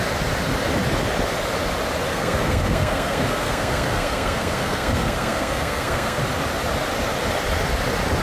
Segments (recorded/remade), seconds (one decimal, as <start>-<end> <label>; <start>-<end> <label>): 0.0-2.1 recorded; 2.1-6.2 remade; 6.2-8.2 recorded